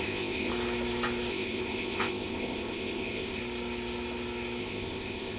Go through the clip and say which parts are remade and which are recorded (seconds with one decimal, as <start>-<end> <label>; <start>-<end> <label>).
0.0-0.5 remade; 0.5-1.3 recorded; 1.3-3.4 remade; 3.4-4.6 recorded; 4.6-5.4 remade